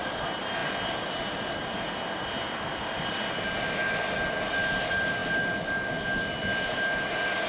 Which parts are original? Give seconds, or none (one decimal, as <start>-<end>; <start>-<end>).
0.0-7.5